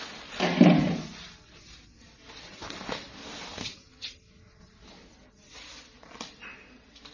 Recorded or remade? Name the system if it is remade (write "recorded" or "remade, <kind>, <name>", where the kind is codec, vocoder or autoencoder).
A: recorded